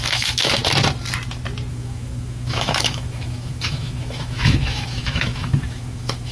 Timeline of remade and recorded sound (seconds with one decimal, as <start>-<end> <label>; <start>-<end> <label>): 0.0-0.6 remade; 0.6-1.7 recorded; 1.7-6.3 remade